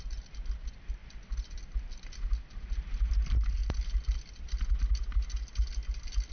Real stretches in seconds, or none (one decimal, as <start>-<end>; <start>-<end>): 0.0-6.3